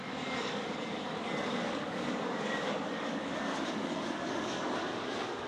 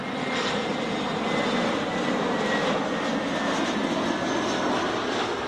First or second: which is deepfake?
first